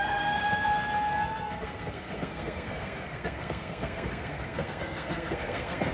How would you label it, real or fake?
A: fake